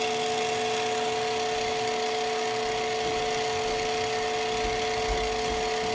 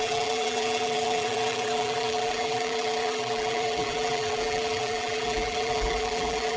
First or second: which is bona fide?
first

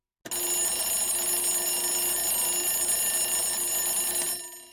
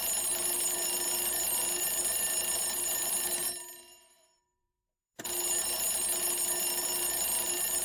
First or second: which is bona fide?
first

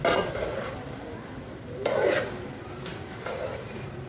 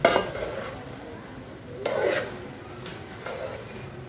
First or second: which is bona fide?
second